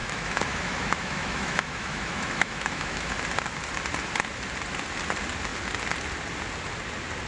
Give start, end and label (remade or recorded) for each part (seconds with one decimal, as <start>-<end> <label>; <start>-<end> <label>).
0.0-3.1 remade; 3.1-7.3 recorded